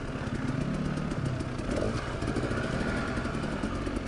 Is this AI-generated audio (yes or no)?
no